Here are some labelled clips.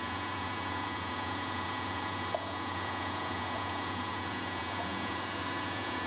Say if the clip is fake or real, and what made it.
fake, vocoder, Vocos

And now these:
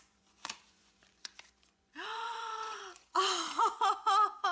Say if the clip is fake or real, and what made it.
fake, vocoder, Vocos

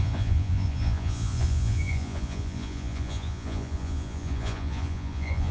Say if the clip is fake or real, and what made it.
fake, vocoder, Vocos